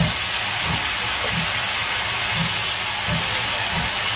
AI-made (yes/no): no